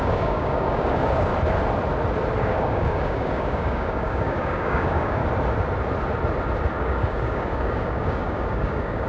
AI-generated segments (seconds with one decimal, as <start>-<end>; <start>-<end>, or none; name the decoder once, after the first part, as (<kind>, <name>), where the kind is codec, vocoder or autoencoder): 0.0-1.3 (codec, DAC); 2.4-5.2; 6.8-9.1